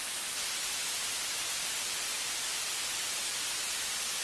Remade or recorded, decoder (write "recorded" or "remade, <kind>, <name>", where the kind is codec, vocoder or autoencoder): recorded